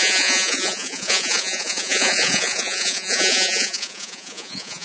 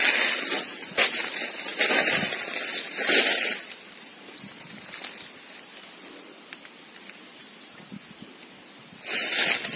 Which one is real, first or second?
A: second